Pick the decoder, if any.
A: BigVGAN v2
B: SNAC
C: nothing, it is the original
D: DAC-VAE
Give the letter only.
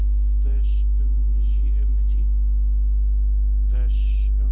C